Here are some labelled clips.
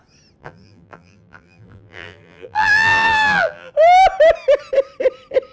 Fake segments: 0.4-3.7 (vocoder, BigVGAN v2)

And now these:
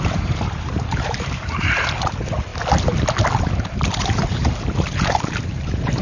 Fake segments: 0.0-2.5 (vocoder, BigVGAN v2); 3.4-6.0

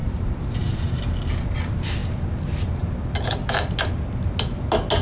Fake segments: 0.0-1.0 (vocoder, BigVGAN v2)